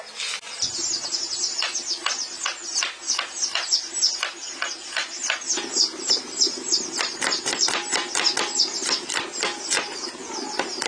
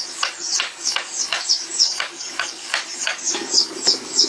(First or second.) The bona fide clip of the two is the first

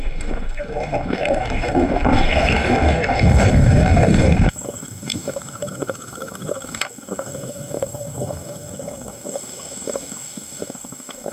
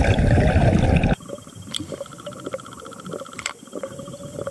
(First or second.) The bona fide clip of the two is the second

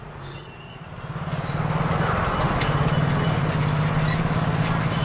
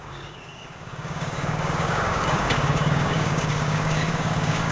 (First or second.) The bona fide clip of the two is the first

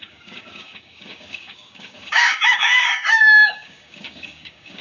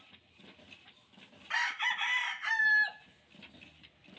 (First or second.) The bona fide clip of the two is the second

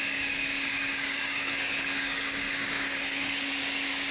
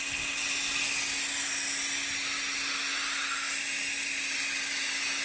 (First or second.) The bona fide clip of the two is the second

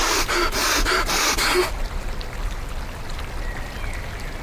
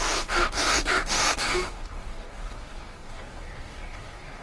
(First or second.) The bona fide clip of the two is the first